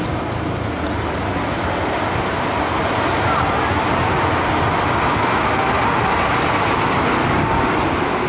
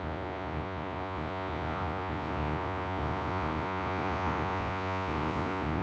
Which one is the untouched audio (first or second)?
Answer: first